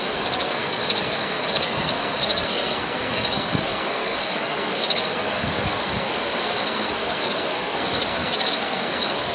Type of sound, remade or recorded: remade